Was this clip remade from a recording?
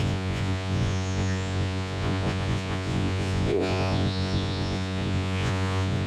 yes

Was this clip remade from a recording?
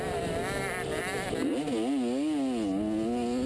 no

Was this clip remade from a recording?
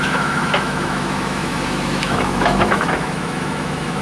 yes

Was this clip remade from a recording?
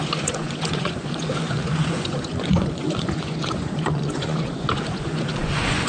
yes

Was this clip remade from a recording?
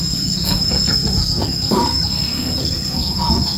yes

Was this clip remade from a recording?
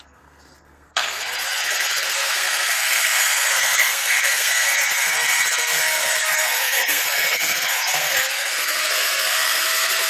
yes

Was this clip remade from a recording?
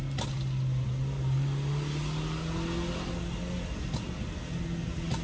no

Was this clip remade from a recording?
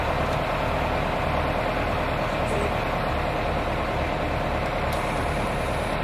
no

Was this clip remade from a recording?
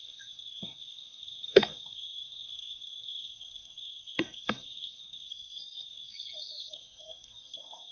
yes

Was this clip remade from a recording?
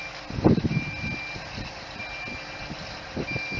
no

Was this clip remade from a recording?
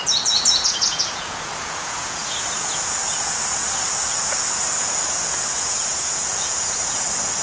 yes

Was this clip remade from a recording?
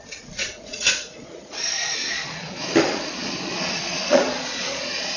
yes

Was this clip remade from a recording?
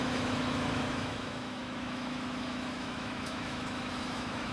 yes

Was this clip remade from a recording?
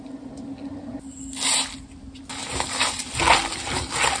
no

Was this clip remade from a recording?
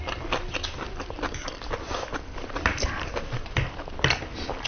no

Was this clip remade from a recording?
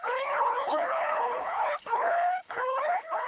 yes